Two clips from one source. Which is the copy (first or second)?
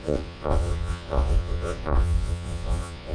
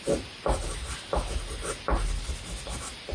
first